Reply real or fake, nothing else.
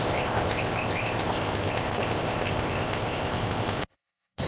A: fake